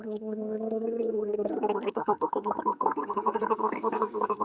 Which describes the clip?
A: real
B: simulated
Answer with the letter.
B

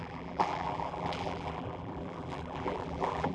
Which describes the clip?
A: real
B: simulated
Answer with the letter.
B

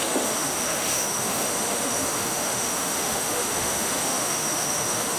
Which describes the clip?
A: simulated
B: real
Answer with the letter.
A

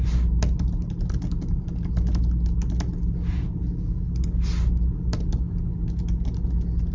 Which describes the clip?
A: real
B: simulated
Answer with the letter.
A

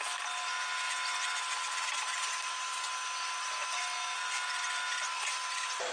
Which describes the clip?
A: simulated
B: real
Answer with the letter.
B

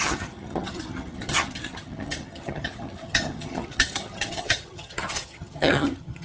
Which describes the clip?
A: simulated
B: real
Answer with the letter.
A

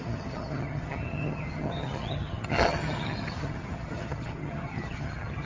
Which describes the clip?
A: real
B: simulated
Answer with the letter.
B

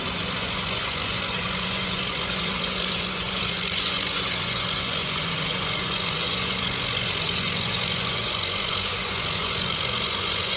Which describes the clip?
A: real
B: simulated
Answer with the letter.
B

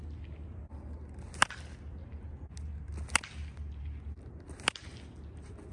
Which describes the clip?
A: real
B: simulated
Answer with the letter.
A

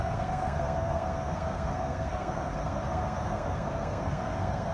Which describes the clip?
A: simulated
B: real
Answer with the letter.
A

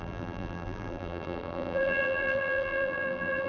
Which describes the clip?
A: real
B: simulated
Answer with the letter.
B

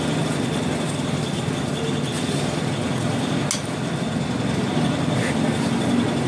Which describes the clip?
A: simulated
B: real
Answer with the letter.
B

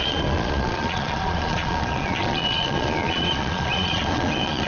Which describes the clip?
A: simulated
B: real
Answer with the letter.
A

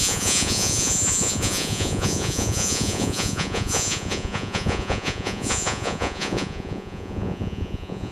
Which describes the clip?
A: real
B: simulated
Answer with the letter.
B